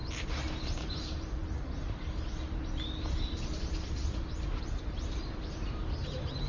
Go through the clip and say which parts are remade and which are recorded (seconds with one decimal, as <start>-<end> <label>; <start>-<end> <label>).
0.0-1.4 remade; 1.4-3.0 recorded; 3.0-6.5 remade